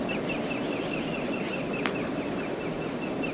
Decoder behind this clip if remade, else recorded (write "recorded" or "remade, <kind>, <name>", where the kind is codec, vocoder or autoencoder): recorded